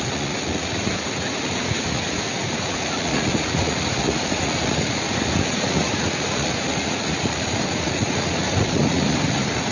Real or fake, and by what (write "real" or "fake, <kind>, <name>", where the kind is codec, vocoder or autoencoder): fake, vocoder, Vocos